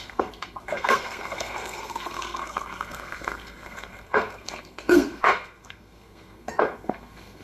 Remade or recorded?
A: remade